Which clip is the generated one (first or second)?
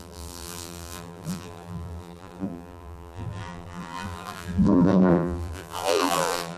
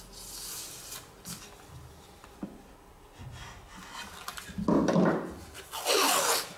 first